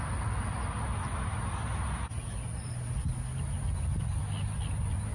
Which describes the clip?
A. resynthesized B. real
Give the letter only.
B